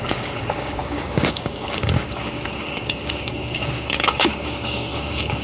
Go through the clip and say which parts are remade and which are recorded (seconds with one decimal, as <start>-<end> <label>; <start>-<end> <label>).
0.0-5.4 remade